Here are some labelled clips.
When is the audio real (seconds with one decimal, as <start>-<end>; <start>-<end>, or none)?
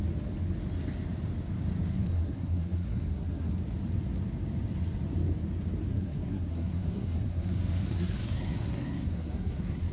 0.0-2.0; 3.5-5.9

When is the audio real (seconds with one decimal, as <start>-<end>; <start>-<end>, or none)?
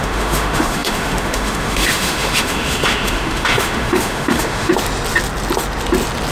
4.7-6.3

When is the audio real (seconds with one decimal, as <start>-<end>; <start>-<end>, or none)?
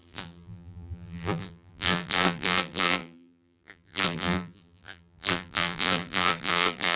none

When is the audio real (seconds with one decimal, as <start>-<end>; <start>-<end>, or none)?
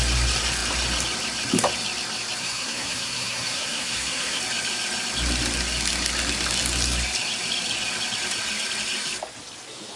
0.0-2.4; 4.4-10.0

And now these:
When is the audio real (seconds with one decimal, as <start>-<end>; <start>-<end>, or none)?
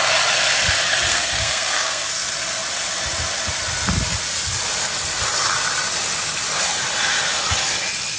0.0-1.1; 2.1-8.2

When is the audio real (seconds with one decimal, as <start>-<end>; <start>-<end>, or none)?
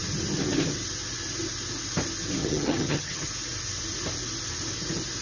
0.0-2.4; 3.3-5.2